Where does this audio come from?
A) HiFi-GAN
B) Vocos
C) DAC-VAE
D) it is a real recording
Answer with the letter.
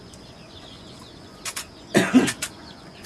B